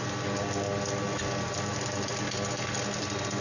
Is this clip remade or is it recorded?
recorded